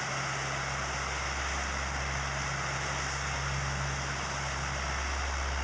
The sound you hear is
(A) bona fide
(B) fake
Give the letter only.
A